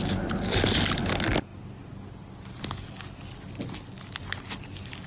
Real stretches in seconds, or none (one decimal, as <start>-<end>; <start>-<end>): 0.0-5.1